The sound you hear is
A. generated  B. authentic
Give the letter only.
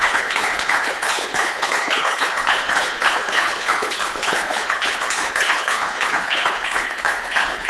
A